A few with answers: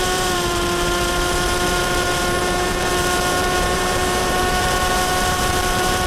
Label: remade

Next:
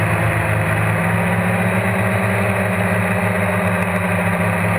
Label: recorded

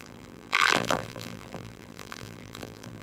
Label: remade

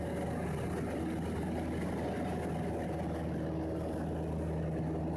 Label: recorded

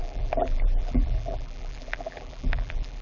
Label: remade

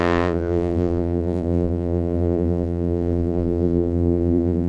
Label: remade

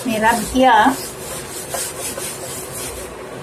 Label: recorded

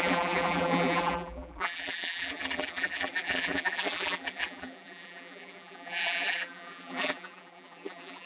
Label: remade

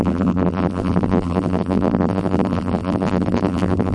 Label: remade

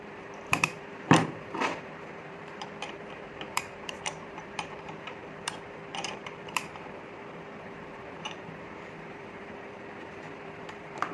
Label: remade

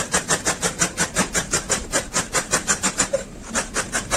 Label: remade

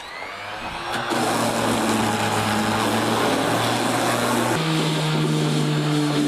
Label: recorded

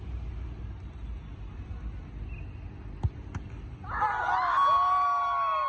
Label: recorded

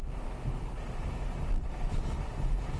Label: remade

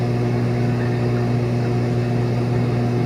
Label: recorded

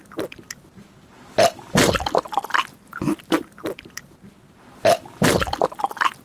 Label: recorded